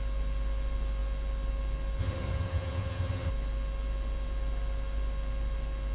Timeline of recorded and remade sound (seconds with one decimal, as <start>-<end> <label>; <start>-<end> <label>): 0.0-2.0 recorded; 2.0-3.3 remade; 3.3-5.9 recorded

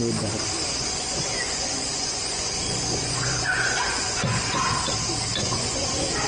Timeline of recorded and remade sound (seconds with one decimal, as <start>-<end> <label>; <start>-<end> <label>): 0.0-0.8 recorded; 0.8-4.6 remade; 4.6-5.3 recorded; 5.3-6.3 remade

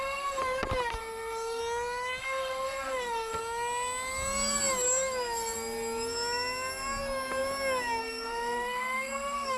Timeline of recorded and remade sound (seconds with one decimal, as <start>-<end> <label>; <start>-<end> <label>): 0.0-0.4 remade; 0.4-1.0 recorded; 1.0-1.6 remade; 1.6-2.2 recorded; 2.2-3.4 remade; 3.4-8.0 recorded; 8.0-9.6 remade

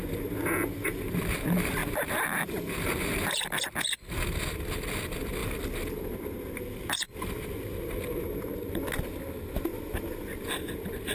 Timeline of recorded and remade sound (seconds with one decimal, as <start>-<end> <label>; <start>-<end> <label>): 0.0-1.8 recorded; 1.8-2.4 remade; 2.4-11.1 recorded

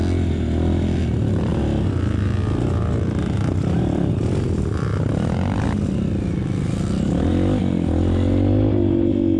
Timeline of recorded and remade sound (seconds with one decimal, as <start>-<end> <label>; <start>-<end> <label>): 0.0-9.4 recorded

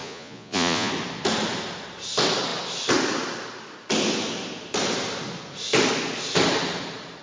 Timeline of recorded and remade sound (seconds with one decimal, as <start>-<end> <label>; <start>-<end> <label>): 0.0-0.9 remade; 0.9-7.2 recorded

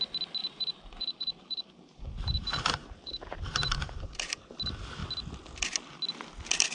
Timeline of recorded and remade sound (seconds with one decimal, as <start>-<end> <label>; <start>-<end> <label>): 0.0-0.4 recorded; 0.4-4.4 remade; 4.4-6.7 recorded